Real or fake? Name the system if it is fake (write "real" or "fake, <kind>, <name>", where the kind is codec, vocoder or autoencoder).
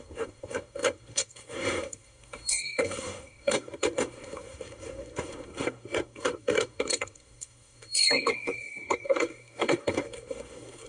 fake, codec, SNAC